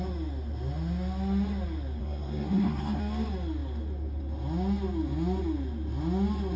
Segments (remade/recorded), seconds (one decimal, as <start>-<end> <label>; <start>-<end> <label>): 0.0-2.0 recorded; 2.0-3.0 remade; 3.0-6.6 recorded